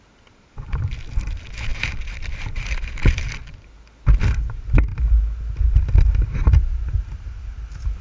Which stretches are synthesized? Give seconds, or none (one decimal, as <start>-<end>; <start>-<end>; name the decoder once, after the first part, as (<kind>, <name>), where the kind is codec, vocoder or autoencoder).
none